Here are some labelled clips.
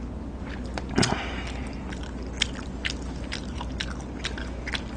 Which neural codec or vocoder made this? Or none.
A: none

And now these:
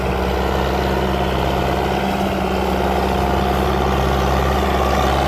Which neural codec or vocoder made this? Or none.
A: none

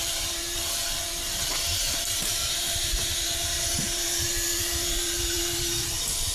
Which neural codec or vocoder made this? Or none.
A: vocoder, BigVGAN v2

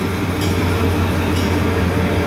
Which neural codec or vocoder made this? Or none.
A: none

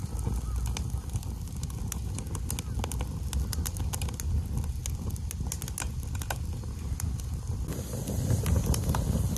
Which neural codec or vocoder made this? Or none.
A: none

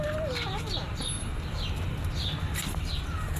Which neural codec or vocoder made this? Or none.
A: none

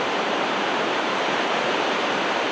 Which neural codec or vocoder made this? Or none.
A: vocoder, BigVGAN v2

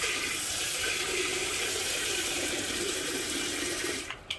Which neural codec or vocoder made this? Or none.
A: vocoder, BigVGAN v2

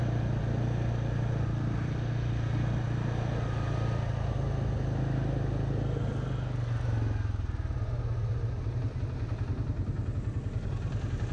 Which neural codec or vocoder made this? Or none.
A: none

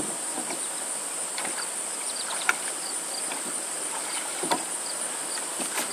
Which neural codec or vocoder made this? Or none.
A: vocoder, BigVGAN v2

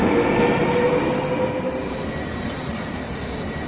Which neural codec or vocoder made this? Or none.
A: none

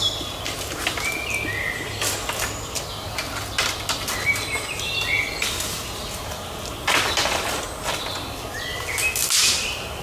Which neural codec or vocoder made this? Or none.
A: none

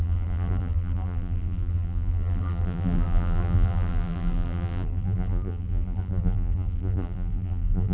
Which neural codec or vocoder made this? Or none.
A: vocoder, BigVGAN v2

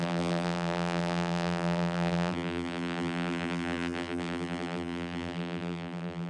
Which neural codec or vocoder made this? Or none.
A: vocoder, BigVGAN v2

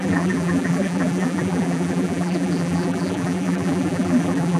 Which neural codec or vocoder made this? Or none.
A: vocoder, BigVGAN v2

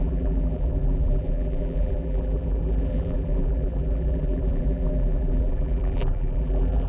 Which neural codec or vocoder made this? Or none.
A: vocoder, BigVGAN v2